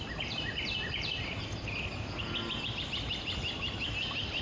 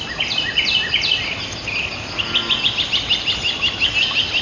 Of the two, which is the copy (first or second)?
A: first